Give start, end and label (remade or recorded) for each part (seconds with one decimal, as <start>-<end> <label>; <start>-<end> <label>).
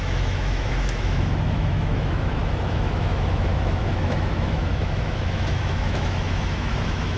0.0-7.2 remade